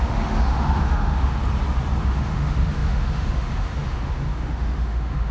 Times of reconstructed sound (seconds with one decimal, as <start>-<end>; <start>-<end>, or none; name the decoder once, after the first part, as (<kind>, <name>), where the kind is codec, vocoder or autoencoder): 0.0-1.4 (autoencoder, DAC-VAE); 2.0-5.3